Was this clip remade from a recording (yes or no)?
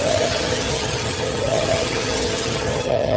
yes